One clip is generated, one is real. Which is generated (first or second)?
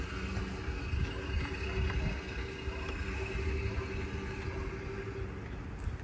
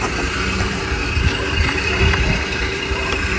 second